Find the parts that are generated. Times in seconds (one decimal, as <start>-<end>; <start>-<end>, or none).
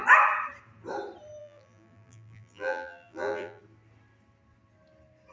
1.4-3.6